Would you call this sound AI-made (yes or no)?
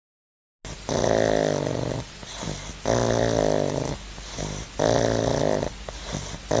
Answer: no